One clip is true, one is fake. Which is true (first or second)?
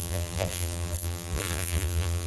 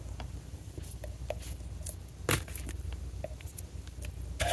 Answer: second